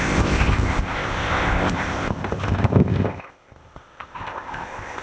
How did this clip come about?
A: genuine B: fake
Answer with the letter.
B